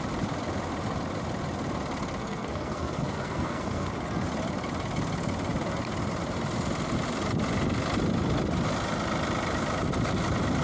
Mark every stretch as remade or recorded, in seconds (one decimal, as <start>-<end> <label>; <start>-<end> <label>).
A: 0.0-2.2 recorded; 2.2-3.9 remade; 3.9-10.6 recorded